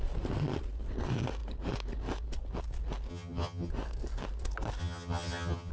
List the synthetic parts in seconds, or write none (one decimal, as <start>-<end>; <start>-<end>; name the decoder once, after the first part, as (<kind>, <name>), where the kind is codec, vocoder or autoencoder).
3.1-3.7 (vocoder, HiFi-GAN); 4.8-5.7